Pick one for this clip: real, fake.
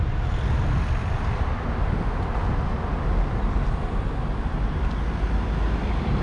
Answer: real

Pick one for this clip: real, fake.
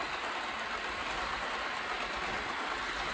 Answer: real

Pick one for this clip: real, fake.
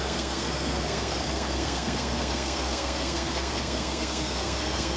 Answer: fake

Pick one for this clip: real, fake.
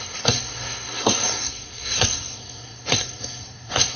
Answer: fake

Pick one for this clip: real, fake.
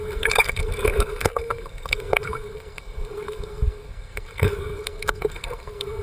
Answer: fake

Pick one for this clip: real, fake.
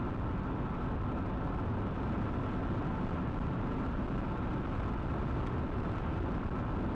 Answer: real